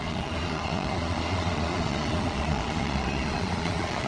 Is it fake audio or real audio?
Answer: fake